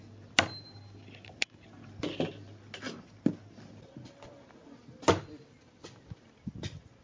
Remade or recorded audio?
recorded